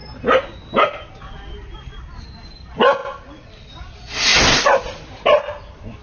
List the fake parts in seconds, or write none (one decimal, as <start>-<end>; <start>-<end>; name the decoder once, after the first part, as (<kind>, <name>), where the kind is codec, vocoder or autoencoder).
3.0-3.7 (vocoder, BigVGAN v2); 4.3-5.2